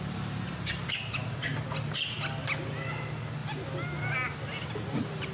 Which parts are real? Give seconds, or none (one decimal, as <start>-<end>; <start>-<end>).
0.0-5.3